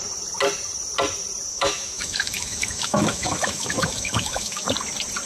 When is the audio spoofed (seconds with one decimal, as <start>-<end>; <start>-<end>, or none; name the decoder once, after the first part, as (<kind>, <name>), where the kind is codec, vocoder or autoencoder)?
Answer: 1.5-4.7 (autoencoder, DAC-VAE)